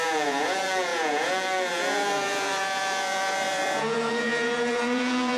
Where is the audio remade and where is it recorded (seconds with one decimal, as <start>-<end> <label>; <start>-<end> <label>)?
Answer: 0.0-5.4 remade